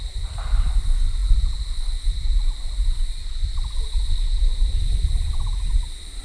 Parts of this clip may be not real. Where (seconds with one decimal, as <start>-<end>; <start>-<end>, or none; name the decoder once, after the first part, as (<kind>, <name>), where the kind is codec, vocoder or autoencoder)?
none